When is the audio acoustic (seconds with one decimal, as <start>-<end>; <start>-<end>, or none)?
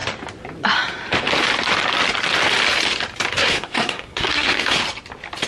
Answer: 0.0-3.3; 4.8-5.5